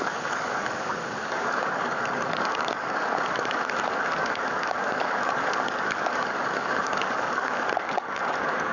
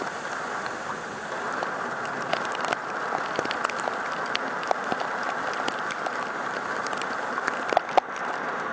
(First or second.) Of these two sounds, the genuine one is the second